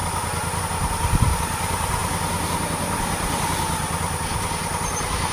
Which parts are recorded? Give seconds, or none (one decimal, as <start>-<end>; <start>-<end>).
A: 0.0-5.3